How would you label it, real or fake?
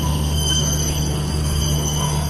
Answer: fake